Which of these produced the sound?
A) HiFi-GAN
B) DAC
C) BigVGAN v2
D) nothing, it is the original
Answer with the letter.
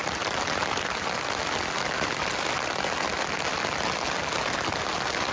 D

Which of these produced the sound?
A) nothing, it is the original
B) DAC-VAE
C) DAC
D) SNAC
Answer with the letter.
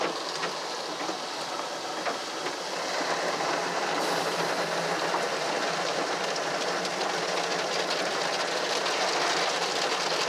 A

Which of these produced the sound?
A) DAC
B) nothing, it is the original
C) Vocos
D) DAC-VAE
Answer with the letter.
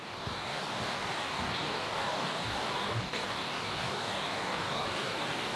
A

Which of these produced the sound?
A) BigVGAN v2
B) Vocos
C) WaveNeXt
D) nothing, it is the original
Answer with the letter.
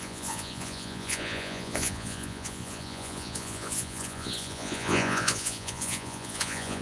B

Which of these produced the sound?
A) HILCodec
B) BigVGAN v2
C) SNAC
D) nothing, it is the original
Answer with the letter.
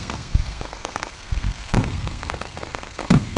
C